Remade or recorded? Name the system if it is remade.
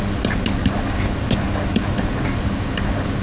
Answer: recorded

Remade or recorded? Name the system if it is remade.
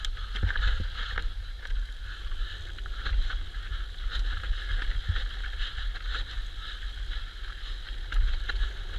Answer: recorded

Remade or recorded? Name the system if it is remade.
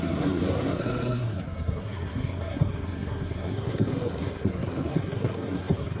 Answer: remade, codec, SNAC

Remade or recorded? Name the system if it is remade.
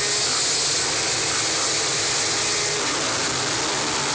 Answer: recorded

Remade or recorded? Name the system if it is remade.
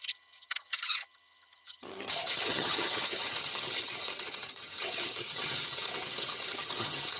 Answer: remade, vocoder, HiFi-GAN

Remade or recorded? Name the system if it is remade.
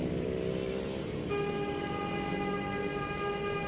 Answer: recorded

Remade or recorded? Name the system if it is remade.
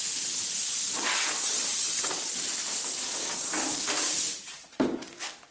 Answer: recorded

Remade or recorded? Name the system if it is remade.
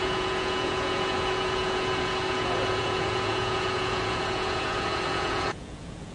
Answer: remade, vocoder, Vocos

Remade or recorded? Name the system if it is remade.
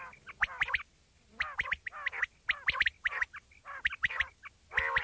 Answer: recorded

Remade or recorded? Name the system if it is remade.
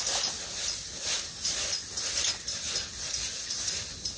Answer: recorded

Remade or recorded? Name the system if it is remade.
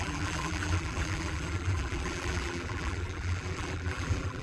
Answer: remade, vocoder, BigVGAN v2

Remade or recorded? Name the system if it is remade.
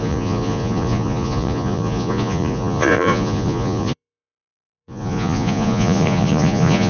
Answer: remade, vocoder, Vocos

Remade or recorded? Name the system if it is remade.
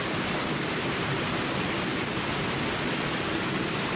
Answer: recorded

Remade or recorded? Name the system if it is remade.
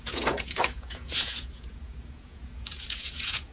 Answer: remade, vocoder, Vocos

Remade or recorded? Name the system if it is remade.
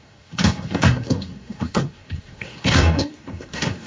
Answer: remade, codec, SNAC